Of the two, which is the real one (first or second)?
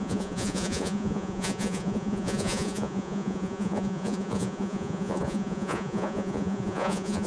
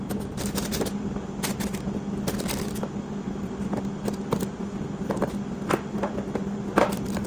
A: second